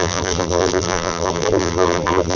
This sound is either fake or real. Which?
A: fake